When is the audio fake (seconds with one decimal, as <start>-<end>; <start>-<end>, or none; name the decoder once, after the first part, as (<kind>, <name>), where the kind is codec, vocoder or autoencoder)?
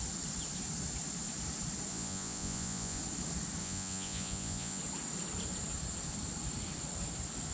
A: 1.9-3.0 (vocoder, Vocos); 3.6-4.8